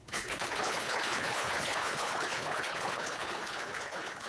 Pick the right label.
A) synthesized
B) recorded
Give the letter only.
A